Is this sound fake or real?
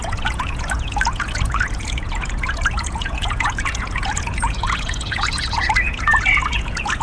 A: fake